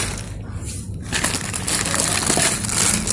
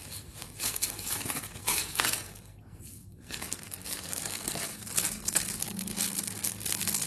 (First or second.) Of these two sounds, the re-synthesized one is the second